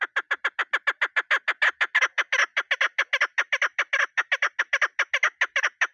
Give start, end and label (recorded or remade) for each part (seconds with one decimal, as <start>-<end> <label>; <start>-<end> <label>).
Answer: 0.0-5.9 recorded